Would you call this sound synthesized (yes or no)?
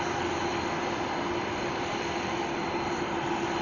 no